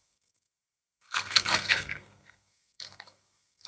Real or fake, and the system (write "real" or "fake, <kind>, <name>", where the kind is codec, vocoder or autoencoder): fake, codec, SNAC